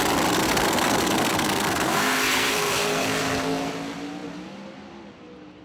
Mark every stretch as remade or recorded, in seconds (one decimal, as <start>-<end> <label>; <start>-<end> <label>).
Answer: 0.0-0.4 recorded; 0.4-3.7 remade; 3.7-5.6 recorded

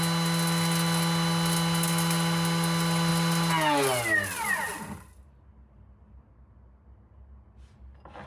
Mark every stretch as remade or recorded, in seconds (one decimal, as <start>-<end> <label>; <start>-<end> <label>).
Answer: 0.0-8.3 recorded

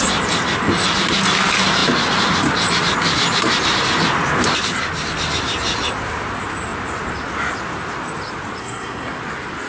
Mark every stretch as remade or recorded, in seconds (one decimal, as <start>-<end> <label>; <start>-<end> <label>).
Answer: 0.0-8.6 recorded; 8.6-9.2 remade; 9.2-9.7 recorded

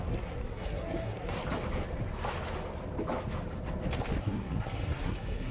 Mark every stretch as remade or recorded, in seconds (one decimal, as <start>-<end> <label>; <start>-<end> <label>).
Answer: 0.0-1.4 remade; 1.4-4.2 recorded; 4.2-5.5 remade

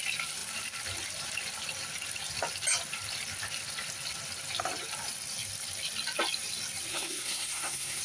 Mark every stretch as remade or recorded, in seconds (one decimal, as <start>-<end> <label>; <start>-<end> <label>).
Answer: 0.0-6.9 recorded; 6.9-8.0 remade

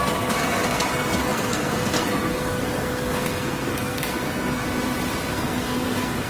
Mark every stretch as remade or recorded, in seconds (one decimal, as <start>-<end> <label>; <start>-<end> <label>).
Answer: 0.0-4.6 remade; 4.6-5.3 recorded; 5.3-6.3 remade